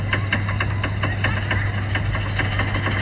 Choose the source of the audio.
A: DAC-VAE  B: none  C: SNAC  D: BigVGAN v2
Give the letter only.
B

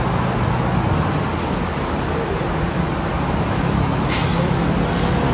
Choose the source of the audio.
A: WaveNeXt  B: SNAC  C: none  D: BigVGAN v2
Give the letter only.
C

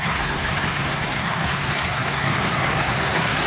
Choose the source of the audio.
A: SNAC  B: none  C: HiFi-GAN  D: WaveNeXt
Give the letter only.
A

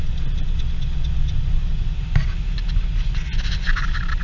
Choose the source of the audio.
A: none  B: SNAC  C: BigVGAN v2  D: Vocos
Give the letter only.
A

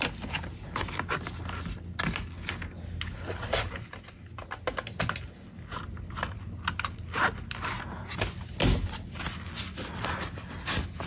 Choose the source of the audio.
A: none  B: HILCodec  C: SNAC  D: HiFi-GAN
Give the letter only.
A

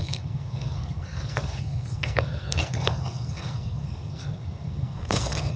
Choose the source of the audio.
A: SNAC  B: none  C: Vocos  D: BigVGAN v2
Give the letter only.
A